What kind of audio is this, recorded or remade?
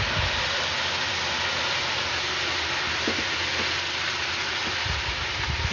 recorded